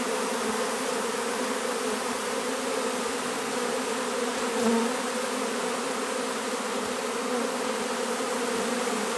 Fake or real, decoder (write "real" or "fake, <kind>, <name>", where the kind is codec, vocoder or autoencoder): real